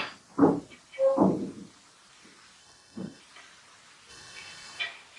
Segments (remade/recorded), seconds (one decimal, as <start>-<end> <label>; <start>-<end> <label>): 0.0-2.6 recorded; 2.6-3.2 remade; 3.2-4.1 recorded; 4.1-4.8 remade; 4.8-5.2 recorded